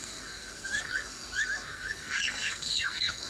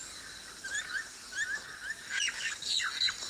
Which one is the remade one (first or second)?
first